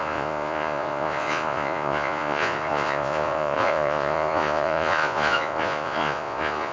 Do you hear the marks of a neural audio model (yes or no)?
yes